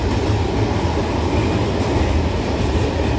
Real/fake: real